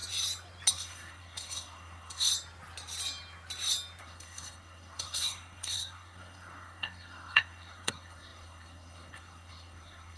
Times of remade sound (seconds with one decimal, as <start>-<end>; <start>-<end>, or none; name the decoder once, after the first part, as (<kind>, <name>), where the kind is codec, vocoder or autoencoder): 0.7-2.3 (codec, SNAC); 4.0-10.2